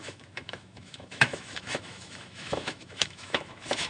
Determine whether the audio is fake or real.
fake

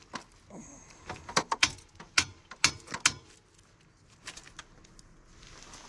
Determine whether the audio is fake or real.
real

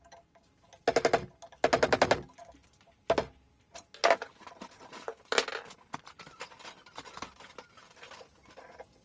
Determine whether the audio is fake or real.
real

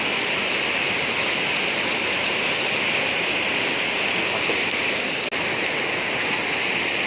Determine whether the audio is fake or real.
real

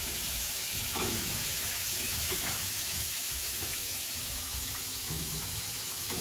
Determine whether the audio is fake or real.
fake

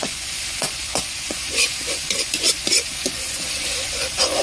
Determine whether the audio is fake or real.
fake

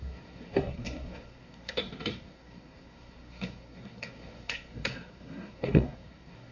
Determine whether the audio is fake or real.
fake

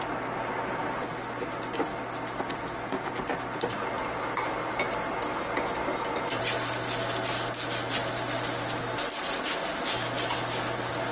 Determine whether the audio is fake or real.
real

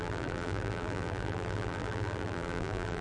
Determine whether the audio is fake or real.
fake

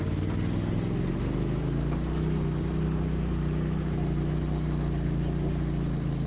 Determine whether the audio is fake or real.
real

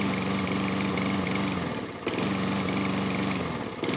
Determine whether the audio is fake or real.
real